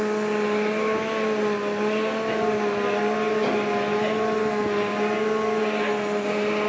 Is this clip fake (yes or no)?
no